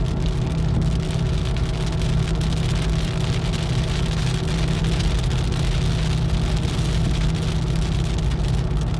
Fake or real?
real